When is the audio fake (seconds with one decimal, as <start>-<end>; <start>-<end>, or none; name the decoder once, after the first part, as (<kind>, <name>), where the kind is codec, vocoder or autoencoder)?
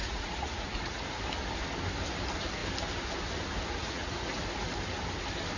0.0-1.2 (vocoder, Vocos); 3.8-4.4